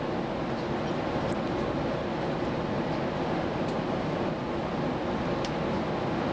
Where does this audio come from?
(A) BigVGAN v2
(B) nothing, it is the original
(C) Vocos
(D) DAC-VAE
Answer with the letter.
B